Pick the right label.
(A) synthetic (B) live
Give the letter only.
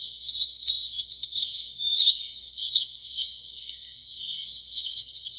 A